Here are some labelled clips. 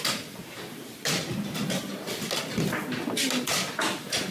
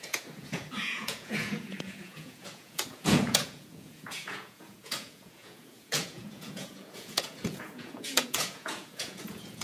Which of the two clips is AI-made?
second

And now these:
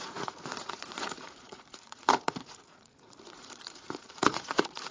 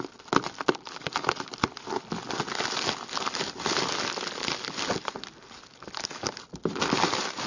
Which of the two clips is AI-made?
first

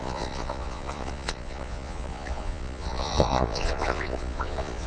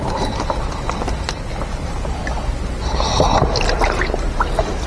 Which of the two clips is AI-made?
first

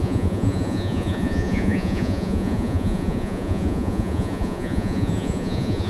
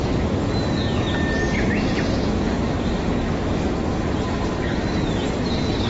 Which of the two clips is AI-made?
first